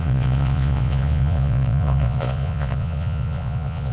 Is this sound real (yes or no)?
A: no